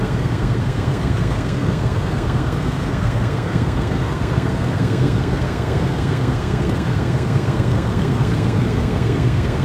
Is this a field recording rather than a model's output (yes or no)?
no